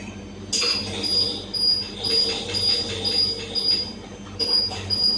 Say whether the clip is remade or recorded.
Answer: recorded